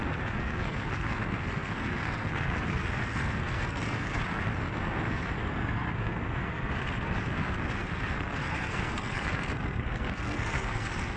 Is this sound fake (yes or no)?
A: yes